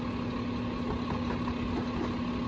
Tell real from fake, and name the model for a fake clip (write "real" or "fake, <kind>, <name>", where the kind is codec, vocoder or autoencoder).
real